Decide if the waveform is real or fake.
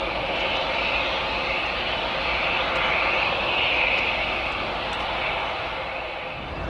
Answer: real